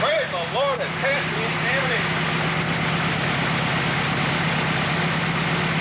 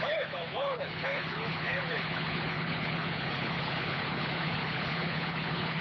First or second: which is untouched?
first